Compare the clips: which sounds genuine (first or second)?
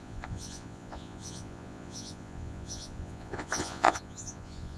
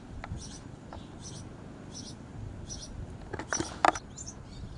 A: second